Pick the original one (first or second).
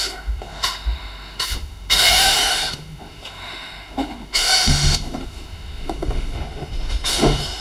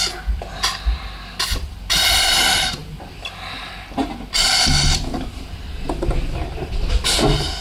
second